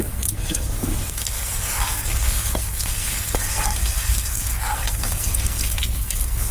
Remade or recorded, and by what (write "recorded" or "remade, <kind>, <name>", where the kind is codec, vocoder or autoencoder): remade, codec, SNAC